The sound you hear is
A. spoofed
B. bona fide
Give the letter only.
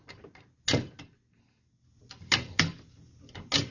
B